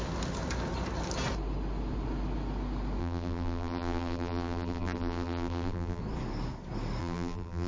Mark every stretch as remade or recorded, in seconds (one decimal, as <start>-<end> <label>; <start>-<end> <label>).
0.0-3.0 recorded; 3.0-6.0 remade; 6.0-7.0 recorded; 7.0-7.7 remade